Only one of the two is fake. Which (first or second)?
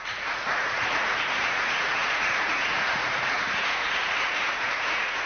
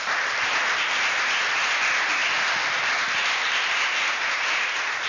first